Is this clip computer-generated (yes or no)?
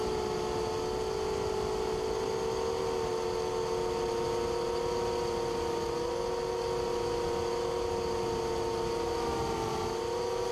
no